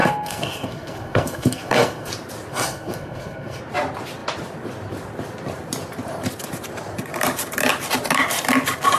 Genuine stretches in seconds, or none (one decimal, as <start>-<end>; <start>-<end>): 2.1-2.5; 3.6-9.0